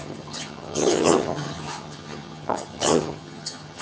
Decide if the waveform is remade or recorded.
remade